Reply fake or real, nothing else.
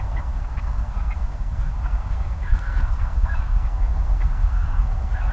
fake